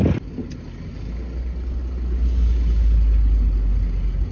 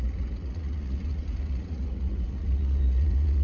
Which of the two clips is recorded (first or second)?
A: first